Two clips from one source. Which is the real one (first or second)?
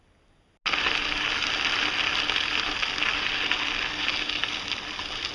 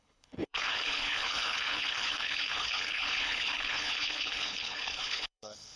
first